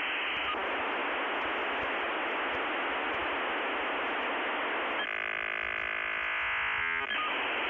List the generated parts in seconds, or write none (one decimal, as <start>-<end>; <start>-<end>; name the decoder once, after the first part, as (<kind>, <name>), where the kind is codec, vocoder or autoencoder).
none